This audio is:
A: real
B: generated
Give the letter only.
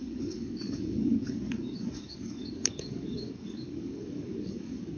B